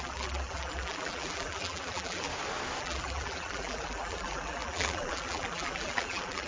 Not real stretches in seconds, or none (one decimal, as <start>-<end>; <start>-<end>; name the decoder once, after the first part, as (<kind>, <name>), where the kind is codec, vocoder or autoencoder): 0.0-2.3 (vocoder, BigVGAN v2); 2.8-6.5